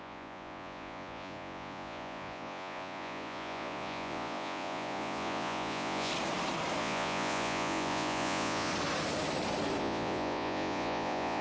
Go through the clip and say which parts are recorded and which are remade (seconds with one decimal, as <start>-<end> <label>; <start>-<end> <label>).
0.0-6.1 remade; 6.1-6.8 recorded; 6.8-8.7 remade; 8.7-9.8 recorded; 9.8-11.4 remade